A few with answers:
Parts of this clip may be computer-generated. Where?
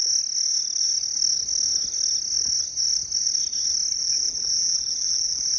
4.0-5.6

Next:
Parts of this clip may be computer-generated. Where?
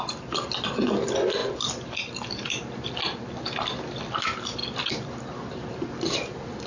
none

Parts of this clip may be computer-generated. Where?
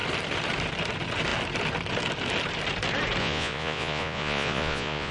3.2-5.1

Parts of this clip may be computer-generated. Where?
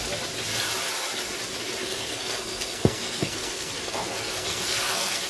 1.8-5.3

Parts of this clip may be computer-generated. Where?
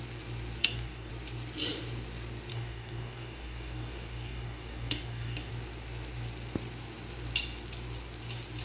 0.6-1.1; 2.5-5.5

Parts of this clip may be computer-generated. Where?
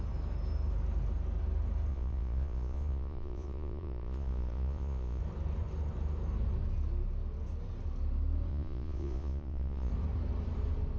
1.9-5.2; 8.5-9.9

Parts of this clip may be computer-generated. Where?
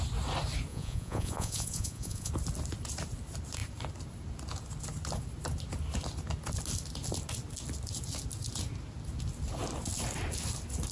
0.7-2.3